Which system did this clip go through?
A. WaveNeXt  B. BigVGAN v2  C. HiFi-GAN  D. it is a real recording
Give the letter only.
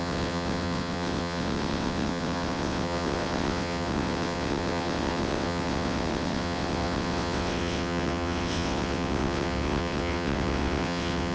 A